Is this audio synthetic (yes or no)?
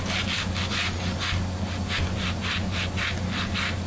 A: no